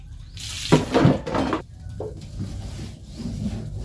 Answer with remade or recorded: recorded